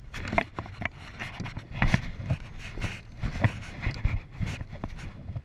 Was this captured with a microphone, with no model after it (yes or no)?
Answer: yes